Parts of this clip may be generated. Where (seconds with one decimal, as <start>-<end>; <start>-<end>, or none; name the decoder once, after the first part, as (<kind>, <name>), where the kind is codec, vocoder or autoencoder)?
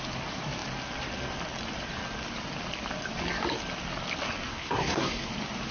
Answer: 4.5-5.3 (codec, SNAC)